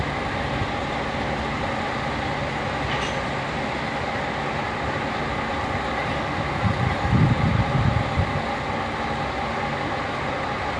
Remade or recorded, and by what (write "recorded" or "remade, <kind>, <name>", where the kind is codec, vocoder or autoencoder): recorded